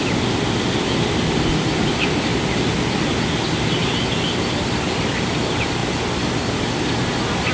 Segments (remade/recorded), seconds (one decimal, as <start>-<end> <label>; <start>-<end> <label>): 0.0-7.5 recorded